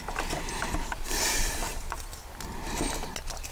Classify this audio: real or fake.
real